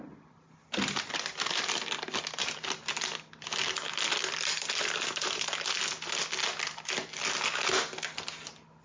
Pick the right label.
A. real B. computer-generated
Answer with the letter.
A